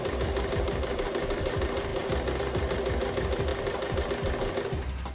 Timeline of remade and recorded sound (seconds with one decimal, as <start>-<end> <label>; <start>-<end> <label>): 0.0-5.1 recorded